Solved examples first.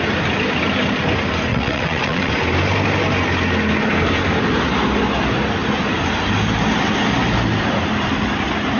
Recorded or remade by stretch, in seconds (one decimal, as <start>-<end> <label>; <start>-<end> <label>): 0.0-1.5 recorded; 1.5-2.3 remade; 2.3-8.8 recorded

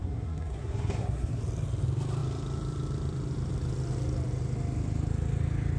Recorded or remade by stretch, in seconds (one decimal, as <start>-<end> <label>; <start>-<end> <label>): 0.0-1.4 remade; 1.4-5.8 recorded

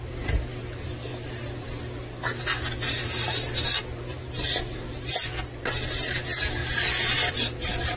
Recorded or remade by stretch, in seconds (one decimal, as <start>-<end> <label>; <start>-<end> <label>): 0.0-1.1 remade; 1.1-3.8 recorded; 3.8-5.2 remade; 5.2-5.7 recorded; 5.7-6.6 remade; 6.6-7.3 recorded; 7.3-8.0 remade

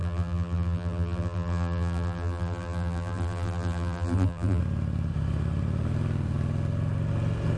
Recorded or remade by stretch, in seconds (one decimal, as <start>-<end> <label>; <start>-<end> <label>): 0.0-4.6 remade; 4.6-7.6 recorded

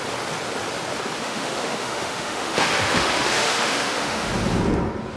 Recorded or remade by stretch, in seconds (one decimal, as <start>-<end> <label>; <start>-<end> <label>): 0.0-1.2 recorded; 1.2-4.3 remade; 4.3-5.2 recorded